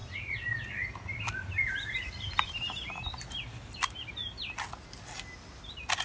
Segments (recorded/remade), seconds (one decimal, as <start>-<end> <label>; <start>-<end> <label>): 0.0-6.0 recorded